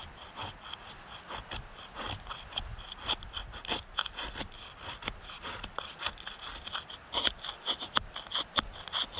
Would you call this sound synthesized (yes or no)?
no